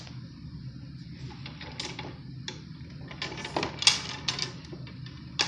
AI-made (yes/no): no